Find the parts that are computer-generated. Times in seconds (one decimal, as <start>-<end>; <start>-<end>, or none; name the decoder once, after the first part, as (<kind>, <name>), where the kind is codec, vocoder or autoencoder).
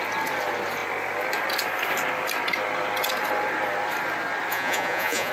4.5-5.3 (vocoder, Vocos)